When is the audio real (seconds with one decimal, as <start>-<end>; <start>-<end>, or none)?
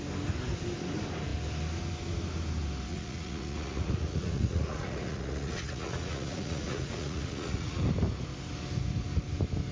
0.0-2.9; 7.8-9.7